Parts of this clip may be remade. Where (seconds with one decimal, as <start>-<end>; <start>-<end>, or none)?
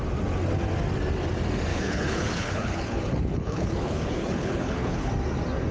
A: 1.7-5.1